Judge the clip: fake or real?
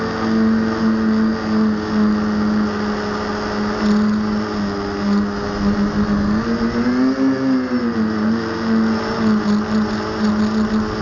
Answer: real